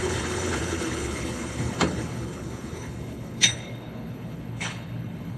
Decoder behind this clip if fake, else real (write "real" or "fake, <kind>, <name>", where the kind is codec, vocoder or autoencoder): fake, codec, HILCodec